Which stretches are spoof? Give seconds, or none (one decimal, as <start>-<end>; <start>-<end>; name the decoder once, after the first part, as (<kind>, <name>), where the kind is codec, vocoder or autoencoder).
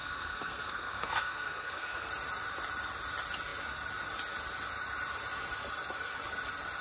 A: 0.0-2.1 (codec, SNAC)